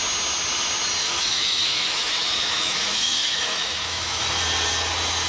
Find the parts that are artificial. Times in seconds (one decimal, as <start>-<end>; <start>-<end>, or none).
1.0-4.2